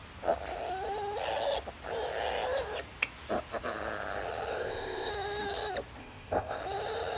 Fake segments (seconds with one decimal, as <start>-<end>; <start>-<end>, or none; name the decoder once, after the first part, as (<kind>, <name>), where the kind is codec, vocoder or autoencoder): 4.5-5.1 (codec, ZipCodec); 6.0-6.6

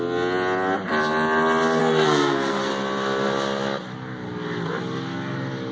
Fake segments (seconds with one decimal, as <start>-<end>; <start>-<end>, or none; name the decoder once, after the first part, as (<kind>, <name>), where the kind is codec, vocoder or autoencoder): 1.8-2.7 (codec, SNAC)

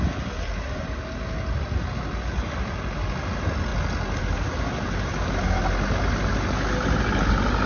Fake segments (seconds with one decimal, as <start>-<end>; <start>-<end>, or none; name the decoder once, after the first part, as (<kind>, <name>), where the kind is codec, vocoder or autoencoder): none

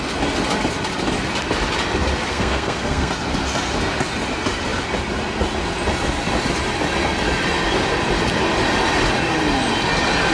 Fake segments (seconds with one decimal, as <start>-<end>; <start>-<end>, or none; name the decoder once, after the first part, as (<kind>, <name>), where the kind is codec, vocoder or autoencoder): 2.3-3.1 (codec, SNAC)